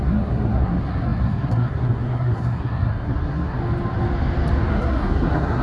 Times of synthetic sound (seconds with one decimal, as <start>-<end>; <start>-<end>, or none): 0.0-3.6; 4.7-5.6